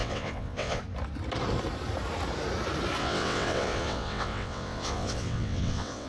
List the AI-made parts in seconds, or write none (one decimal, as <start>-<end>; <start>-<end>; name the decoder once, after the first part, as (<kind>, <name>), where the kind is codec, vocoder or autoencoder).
0.0-0.8 (vocoder, WaveNeXt); 3.0-6.1